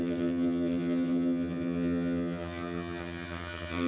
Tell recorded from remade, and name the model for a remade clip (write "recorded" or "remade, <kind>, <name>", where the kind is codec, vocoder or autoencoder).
remade, vocoder, HiFi-GAN